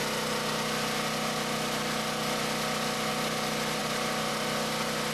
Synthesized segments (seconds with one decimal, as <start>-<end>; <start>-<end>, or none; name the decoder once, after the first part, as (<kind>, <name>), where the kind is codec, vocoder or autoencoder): none

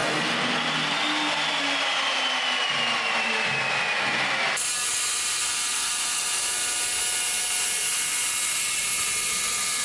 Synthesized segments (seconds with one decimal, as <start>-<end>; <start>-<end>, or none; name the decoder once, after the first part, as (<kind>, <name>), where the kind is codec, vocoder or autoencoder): none

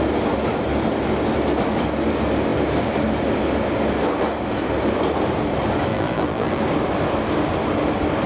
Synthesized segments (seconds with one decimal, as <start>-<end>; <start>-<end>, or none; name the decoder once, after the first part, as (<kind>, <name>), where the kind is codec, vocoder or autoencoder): 5.9-6.6 (vocoder, BigVGAN v2)

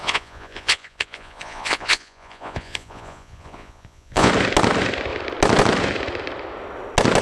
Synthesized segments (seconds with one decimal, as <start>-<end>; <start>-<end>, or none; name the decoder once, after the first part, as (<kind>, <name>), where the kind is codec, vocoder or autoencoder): 0.0-4.3 (vocoder, Vocos)

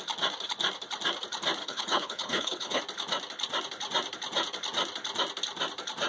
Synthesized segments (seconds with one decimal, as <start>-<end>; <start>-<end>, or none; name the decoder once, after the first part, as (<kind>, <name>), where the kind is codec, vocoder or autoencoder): 1.6-2.8 (codec, HILCodec)

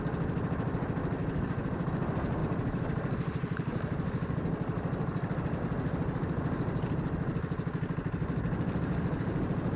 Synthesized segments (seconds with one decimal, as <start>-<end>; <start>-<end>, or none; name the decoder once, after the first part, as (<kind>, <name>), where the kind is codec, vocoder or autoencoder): 1.2-1.9 (vocoder, BigVGAN v2)

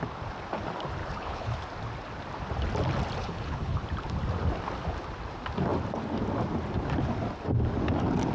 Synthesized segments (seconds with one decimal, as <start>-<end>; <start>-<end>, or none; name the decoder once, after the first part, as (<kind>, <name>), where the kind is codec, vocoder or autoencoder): 1.0-1.5 (codec, HILCodec); 3.2-3.8